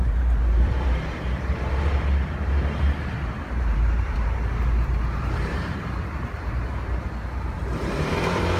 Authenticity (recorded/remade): remade